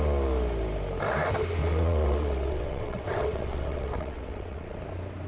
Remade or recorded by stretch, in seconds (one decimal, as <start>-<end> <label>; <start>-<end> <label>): 0.0-1.6 recorded; 1.6-4.8 remade; 4.8-5.3 recorded